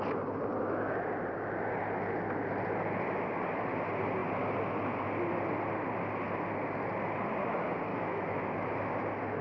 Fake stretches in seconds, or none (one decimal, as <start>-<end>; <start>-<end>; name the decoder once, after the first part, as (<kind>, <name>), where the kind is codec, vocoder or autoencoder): 0.6-1.1 (autoencoder, DAC-VAE); 7.9-8.7